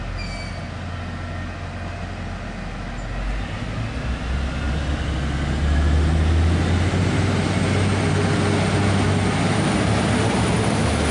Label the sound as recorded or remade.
recorded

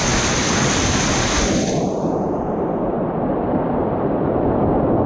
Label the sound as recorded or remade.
recorded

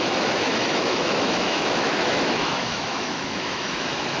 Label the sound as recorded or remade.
remade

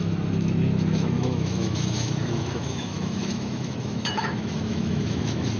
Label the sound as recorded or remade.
remade